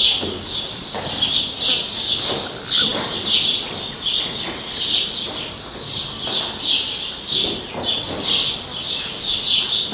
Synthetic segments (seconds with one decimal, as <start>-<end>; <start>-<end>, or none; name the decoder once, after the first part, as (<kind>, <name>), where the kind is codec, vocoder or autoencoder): none